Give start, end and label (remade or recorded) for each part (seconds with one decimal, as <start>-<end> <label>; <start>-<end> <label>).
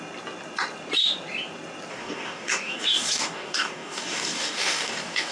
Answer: 0.0-1.9 recorded; 1.9-5.3 remade